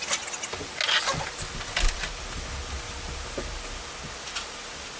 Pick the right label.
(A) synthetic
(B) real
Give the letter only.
B